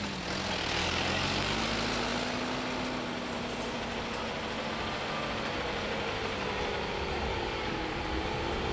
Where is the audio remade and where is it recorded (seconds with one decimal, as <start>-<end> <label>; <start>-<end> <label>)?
0.0-0.8 recorded; 0.8-1.6 remade; 1.6-7.3 recorded; 7.3-8.0 remade; 8.0-8.7 recorded